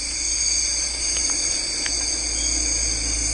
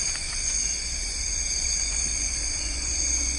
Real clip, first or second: first